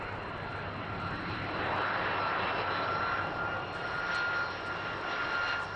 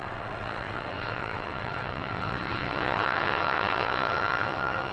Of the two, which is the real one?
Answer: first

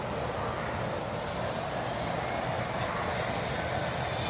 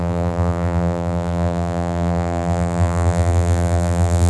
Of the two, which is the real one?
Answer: first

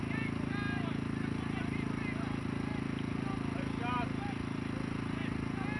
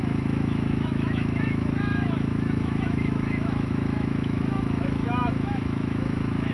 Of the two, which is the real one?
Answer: first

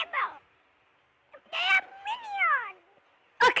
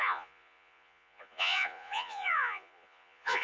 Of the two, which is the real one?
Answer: first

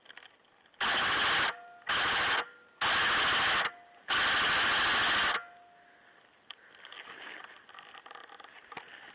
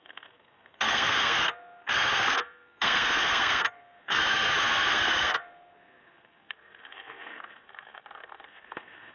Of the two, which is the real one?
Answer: first